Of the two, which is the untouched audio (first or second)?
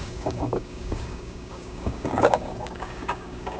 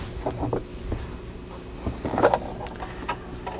second